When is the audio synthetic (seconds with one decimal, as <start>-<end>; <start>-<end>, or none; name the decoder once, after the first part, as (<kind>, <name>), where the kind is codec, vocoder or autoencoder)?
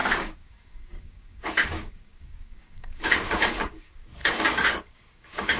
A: 0.0-5.6 (codec, DAC)